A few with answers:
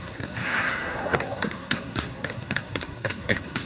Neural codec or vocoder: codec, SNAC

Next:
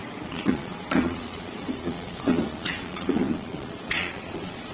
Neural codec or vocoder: vocoder, Vocos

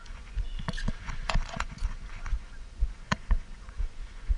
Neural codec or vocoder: vocoder, Vocos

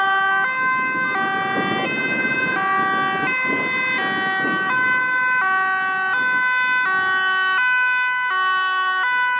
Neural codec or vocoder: none